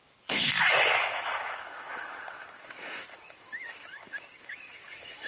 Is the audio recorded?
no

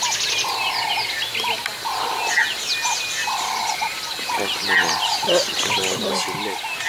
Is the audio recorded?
yes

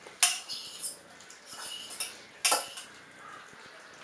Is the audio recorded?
yes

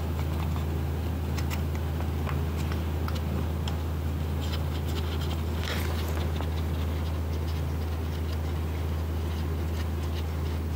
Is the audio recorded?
yes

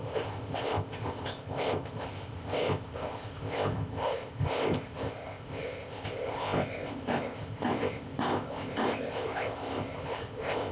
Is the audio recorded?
no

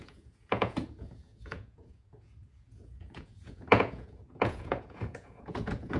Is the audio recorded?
no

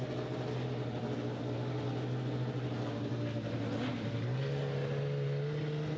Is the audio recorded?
yes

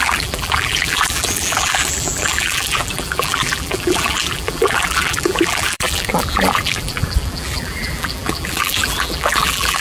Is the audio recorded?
no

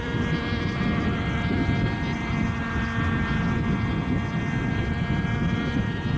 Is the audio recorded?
yes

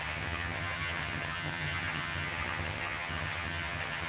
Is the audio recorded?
no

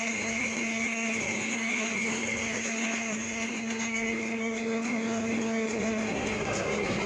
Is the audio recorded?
no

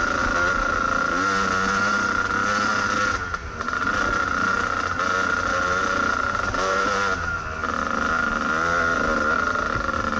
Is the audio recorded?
yes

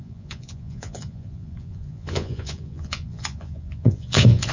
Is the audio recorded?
no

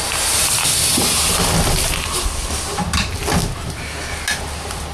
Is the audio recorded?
yes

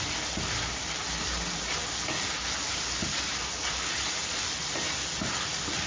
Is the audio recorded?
yes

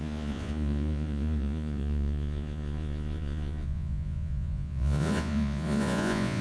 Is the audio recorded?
no